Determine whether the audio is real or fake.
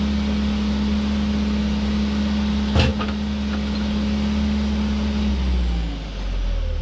real